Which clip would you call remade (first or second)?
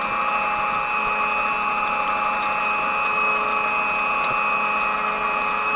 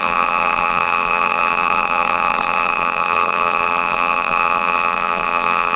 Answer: second